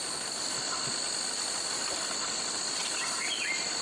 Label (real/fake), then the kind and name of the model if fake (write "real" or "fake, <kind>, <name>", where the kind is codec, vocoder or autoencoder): real